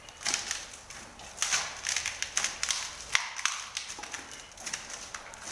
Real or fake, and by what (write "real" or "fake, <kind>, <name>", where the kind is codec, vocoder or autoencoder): real